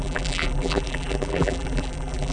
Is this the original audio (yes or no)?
no